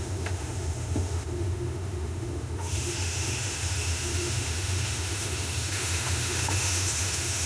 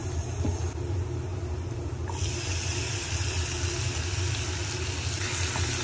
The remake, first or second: first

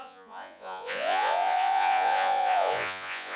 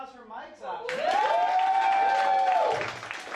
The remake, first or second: first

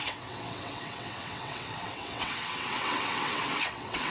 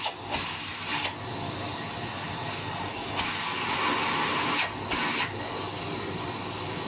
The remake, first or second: first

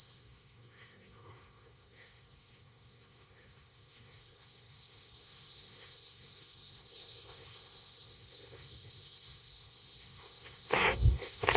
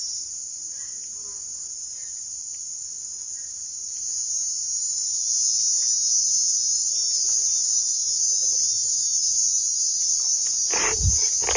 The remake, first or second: first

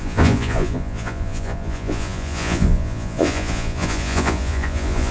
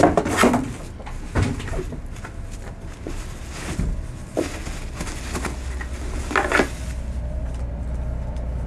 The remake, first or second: first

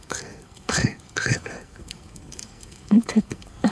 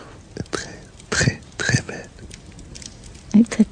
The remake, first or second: first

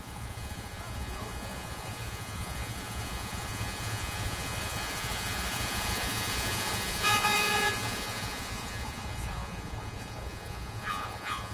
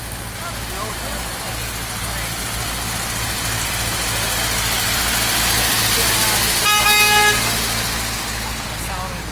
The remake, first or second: first